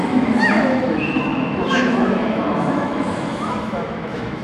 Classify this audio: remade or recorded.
remade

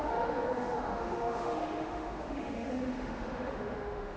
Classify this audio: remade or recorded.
remade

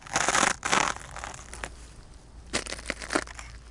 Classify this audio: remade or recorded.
recorded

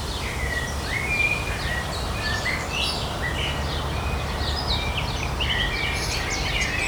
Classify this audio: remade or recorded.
recorded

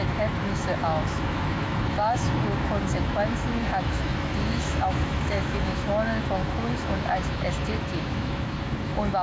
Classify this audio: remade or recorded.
remade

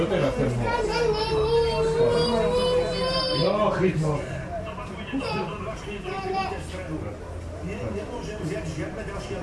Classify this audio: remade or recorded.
recorded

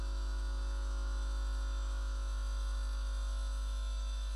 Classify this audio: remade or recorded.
remade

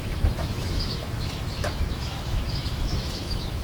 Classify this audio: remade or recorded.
remade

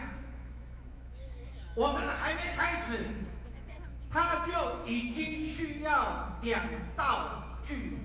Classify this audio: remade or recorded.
remade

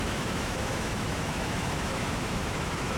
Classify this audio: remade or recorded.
remade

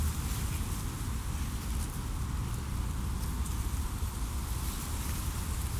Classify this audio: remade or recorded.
recorded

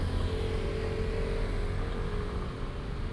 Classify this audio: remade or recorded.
recorded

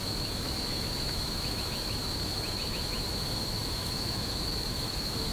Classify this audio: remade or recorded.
remade